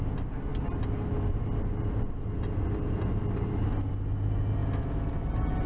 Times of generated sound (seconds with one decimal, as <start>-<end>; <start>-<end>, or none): none